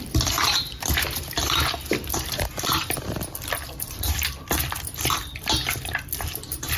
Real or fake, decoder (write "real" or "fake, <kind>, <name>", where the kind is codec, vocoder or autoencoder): fake, vocoder, BigVGAN v2